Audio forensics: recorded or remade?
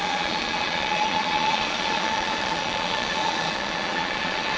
remade